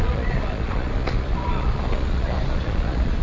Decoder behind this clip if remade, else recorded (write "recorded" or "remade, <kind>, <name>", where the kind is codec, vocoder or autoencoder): remade, vocoder, Vocos